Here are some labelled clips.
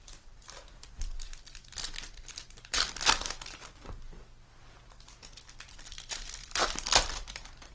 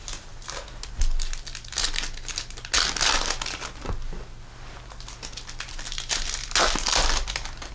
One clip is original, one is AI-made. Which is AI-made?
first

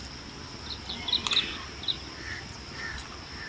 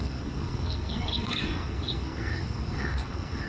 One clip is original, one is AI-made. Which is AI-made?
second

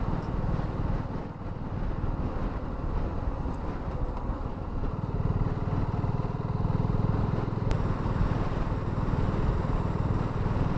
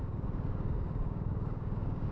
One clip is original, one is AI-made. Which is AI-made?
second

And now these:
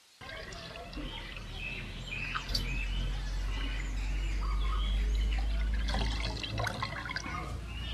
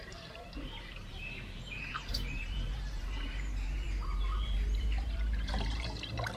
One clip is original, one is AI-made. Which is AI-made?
second